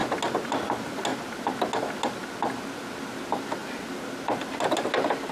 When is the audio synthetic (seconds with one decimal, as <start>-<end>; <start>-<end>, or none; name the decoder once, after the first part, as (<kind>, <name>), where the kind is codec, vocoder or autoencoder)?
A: none